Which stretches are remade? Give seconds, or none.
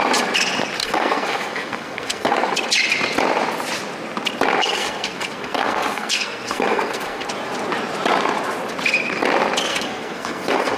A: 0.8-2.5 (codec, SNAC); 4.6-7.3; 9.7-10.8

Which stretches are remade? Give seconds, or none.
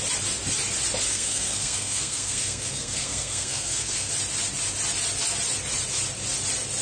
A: 1.1-4.1 (codec, SNAC)